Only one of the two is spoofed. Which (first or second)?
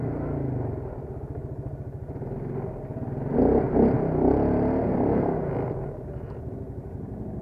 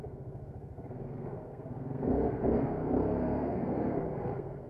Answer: second